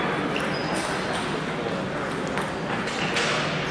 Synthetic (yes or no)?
no